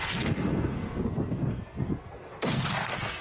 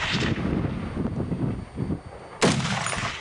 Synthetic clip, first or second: first